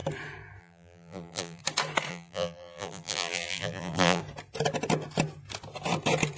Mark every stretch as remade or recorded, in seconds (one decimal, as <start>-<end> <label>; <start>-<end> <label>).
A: 0.0-0.6 recorded; 0.6-1.6 remade; 1.6-2.1 recorded; 2.1-4.2 remade; 4.2-6.4 recorded